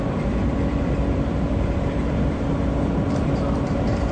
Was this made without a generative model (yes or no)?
no